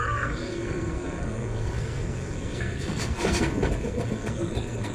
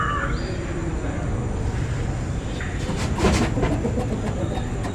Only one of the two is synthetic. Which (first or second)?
first